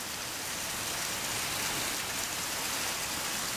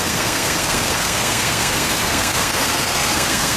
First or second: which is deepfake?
second